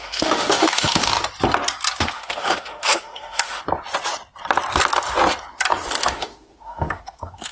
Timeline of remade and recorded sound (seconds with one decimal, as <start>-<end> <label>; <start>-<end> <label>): 0.0-1.1 remade; 1.1-2.0 recorded; 2.0-3.6 remade; 3.6-6.0 recorded; 6.0-7.5 remade